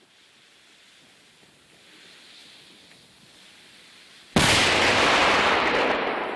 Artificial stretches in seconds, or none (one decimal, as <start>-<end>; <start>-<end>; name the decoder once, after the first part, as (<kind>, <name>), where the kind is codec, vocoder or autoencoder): none